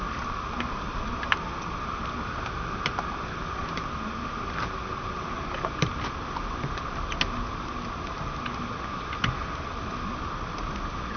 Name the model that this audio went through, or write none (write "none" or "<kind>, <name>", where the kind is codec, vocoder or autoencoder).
none